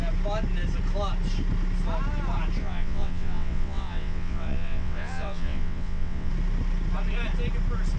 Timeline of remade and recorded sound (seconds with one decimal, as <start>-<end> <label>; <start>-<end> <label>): 0.0-2.6 recorded; 2.6-6.3 remade; 6.3-8.0 recorded